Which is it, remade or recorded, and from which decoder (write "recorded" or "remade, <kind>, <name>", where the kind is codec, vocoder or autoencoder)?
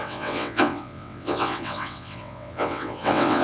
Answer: remade, vocoder, WaveNeXt